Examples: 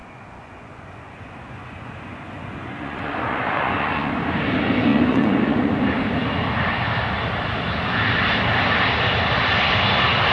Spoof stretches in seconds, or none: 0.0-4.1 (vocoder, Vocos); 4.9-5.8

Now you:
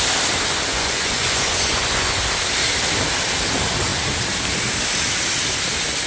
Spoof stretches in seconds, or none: 0.7-2.2 (vocoder, Vocos)